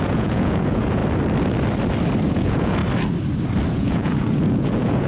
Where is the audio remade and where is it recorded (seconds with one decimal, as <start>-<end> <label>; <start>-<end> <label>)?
0.0-1.0 remade; 1.0-2.3 recorded; 2.3-2.8 remade; 2.8-3.7 recorded; 3.7-5.1 remade